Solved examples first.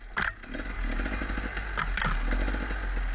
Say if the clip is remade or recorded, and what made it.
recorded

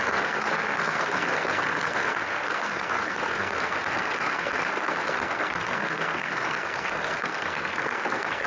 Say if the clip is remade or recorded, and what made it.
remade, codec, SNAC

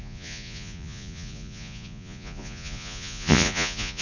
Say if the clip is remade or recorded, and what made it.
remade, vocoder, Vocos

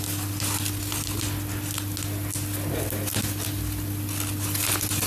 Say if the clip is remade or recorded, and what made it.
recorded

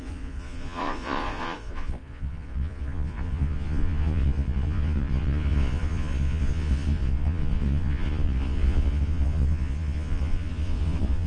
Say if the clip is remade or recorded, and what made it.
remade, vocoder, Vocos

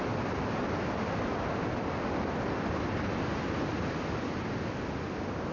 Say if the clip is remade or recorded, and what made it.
recorded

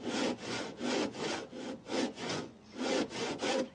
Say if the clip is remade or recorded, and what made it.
remade, vocoder, Vocos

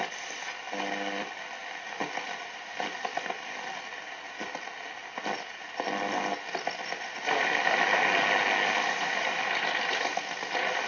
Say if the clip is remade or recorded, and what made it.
recorded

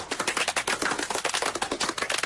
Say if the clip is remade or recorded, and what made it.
recorded